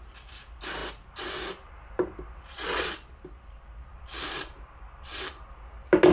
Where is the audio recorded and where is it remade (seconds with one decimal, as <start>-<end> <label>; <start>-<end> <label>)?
0.0-3.9 recorded; 3.9-5.3 remade; 5.3-6.1 recorded